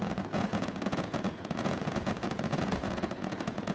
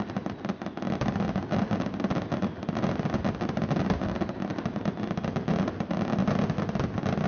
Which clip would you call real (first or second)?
second